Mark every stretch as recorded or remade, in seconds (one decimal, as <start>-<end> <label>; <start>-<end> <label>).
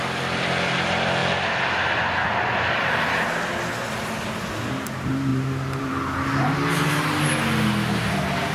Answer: 0.0-5.3 recorded; 5.3-5.9 remade; 5.9-8.5 recorded